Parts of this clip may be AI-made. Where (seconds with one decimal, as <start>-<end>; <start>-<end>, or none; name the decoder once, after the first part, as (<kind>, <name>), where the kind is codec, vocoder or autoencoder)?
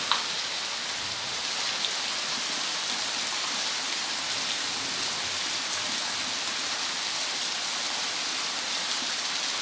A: none